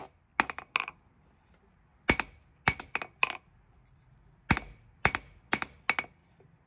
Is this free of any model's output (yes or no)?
yes